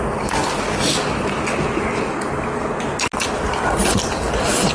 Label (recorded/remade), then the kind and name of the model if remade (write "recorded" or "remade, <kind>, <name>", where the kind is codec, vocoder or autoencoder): recorded